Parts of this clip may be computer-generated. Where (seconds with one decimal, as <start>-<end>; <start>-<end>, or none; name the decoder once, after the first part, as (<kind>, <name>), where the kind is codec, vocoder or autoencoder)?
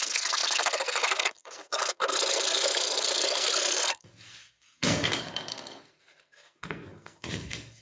0.0-7.8 (codec, SNAC)